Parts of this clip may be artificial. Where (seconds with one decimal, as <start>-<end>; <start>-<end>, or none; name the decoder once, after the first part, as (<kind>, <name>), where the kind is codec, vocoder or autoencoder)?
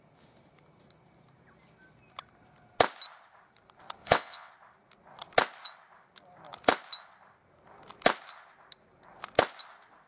4.0-4.5 (vocoder, WaveNeXt)